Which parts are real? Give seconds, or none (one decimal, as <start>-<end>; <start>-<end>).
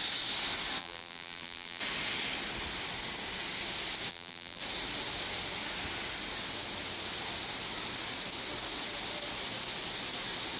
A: 0.0-0.8; 1.8-4.1; 4.6-10.6